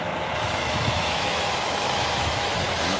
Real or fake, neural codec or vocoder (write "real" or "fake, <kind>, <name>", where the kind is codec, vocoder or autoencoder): fake, autoencoder, DAC-VAE